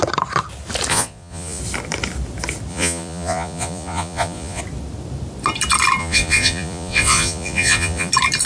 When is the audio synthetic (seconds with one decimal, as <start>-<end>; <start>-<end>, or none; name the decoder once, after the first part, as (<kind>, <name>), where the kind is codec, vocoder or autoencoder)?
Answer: 0.9-1.6 (vocoder, Vocos); 2.7-4.6; 6.0-8.1